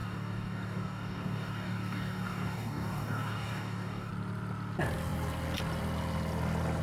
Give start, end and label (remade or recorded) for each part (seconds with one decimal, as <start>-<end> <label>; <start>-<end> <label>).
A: 0.0-4.1 remade; 4.1-6.8 recorded